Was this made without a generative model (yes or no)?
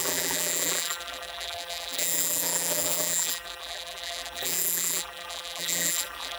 no